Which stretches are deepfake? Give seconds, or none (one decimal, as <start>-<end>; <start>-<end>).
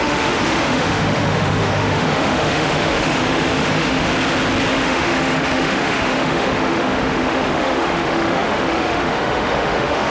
0.0-4.1; 4.7-10.1